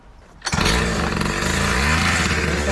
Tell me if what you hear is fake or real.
real